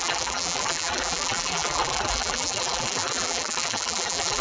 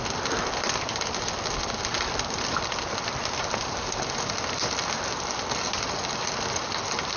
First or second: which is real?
second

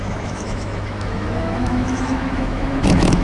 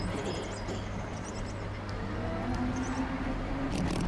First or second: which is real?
second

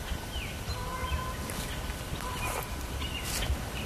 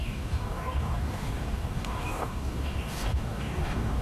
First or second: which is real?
first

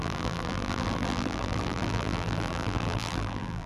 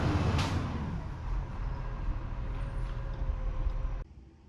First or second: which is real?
second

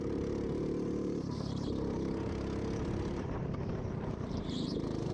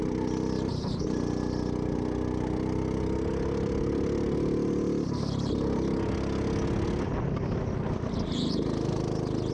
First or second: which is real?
second